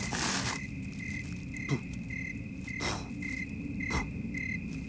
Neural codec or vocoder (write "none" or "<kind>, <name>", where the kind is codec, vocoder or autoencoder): none